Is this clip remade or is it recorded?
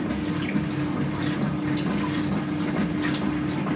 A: recorded